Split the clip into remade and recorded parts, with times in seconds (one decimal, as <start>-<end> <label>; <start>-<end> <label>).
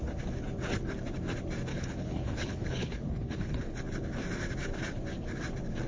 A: 0.0-1.7 recorded; 1.7-3.8 remade; 3.8-5.9 recorded